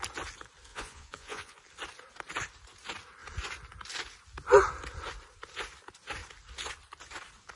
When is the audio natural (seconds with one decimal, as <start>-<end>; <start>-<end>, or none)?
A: 0.0-0.7; 1.6-7.6